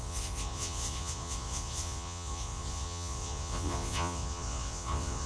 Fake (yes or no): yes